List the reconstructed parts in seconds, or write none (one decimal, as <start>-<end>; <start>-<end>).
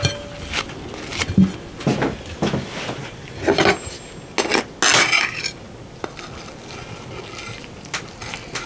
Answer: none